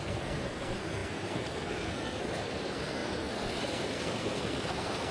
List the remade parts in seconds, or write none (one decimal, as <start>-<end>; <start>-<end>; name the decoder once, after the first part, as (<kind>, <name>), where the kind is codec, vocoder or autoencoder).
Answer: 0.0-5.1 (codec, SNAC)